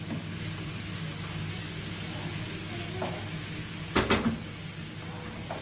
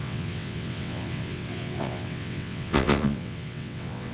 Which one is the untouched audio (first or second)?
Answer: first